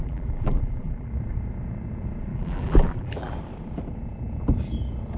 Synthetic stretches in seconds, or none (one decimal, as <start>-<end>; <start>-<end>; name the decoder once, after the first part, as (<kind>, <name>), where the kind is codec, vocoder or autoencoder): 0.0-1.1 (vocoder, BigVGAN v2); 2.3-3.3